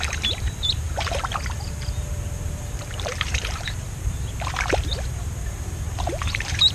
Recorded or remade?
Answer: remade